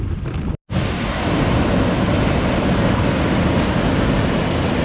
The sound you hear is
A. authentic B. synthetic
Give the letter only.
A